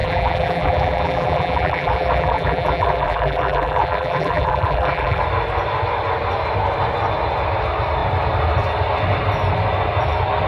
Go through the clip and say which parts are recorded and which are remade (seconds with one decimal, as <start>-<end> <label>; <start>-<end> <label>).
0.0-5.2 remade; 5.2-10.5 recorded